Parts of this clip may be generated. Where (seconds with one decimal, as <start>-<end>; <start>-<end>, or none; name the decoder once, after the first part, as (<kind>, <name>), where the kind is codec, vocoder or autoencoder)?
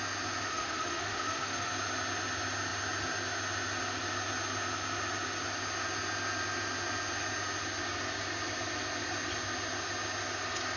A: 0.5-1.7 (autoencoder, DAC-VAE)